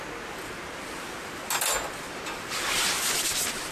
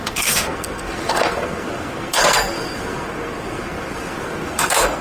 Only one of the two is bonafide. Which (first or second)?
first